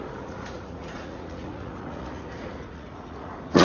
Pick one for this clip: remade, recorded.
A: remade